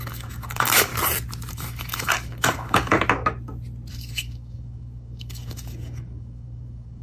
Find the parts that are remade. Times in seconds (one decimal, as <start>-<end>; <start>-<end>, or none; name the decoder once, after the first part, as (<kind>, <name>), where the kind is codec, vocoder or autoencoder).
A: 0.0-0.9 (codec, DAC); 1.5-2.9; 3.9-7.0